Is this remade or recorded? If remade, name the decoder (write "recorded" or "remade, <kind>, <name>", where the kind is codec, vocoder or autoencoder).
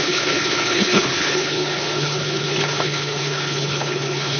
remade, codec, HILCodec